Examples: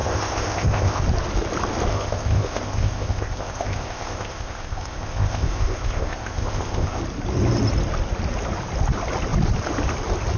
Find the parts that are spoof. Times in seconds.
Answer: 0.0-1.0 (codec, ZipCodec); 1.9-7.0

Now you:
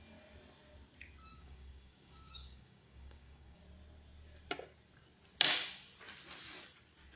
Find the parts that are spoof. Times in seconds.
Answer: 1.3-3.6 (codec, DAC)